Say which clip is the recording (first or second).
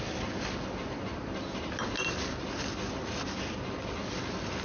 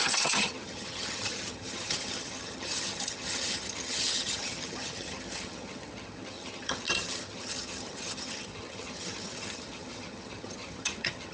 first